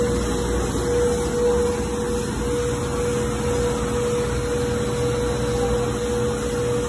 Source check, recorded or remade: recorded